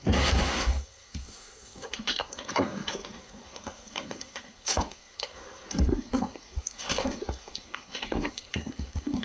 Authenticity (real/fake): fake